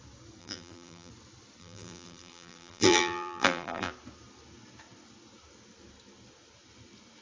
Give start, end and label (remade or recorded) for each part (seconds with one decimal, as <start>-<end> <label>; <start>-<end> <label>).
0.0-0.4 recorded; 0.4-1.1 remade; 1.1-1.6 recorded; 1.6-3.9 remade; 3.9-7.2 recorded